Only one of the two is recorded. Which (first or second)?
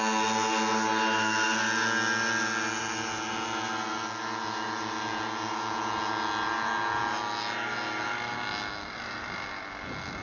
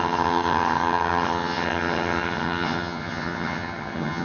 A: first